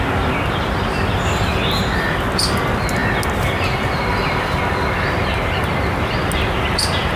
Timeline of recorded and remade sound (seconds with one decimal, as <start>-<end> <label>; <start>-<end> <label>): 0.0-7.2 recorded